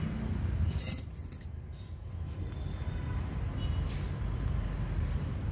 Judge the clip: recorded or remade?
recorded